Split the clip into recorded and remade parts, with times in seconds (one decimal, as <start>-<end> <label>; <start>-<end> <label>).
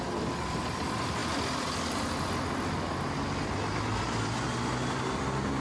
0.0-5.6 recorded